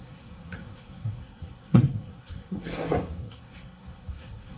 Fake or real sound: fake